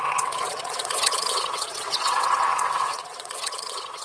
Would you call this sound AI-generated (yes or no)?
yes